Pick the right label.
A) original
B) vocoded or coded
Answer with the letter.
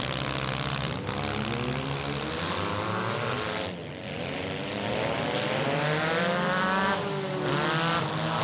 A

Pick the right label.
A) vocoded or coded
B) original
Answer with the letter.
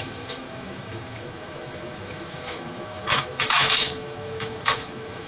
A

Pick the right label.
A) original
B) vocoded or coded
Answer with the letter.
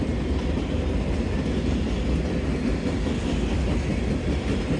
A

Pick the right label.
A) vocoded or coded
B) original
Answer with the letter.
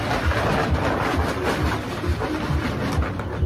B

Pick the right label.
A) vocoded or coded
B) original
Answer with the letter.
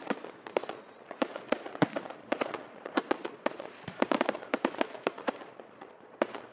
A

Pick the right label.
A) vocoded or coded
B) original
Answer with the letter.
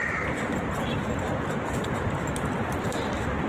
B